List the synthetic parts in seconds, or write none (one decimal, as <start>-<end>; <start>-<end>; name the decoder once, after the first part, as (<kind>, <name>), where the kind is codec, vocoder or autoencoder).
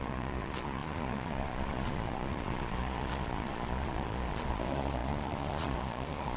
0.0-6.4 (vocoder, Vocos)